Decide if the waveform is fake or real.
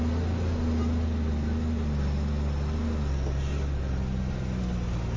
real